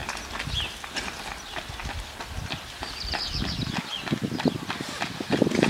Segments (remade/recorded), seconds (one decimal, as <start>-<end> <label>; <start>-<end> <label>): 0.0-5.7 recorded